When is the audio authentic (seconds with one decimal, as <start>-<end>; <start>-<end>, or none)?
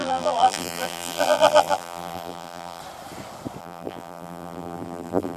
2.8-3.6